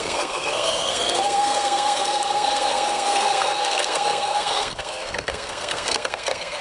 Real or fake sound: fake